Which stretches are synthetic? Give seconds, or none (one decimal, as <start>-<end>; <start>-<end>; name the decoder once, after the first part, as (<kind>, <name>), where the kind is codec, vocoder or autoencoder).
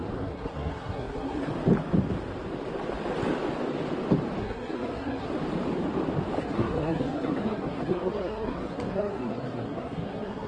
0.0-1.5 (codec, SNAC); 4.4-5.3; 6.4-10.5